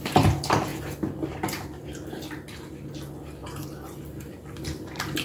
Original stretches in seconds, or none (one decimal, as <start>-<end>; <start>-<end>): 0.0-3.4; 4.0-5.2